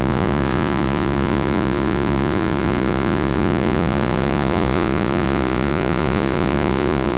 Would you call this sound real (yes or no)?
no